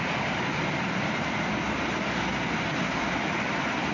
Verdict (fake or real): real